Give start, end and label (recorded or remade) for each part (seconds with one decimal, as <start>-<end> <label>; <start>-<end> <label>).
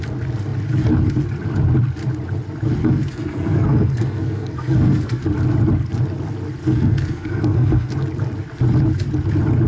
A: 0.0-2.8 recorded; 2.8-5.2 remade; 5.2-6.6 recorded; 6.6-7.9 remade; 7.9-9.7 recorded